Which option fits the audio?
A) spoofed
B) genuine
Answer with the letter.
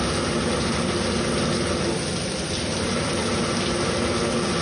B